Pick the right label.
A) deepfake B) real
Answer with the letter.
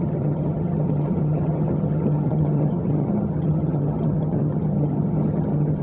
A